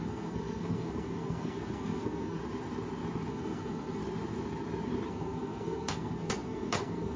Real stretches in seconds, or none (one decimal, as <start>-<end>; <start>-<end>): 2.4-3.3; 4.0-5.1